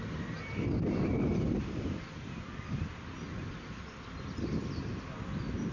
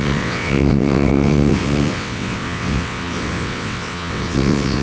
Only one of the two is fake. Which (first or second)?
second